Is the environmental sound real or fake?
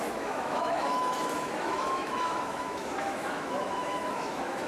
fake